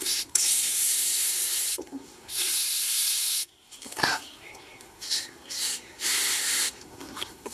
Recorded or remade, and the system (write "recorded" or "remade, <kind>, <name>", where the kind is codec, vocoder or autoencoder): remade, codec, SNAC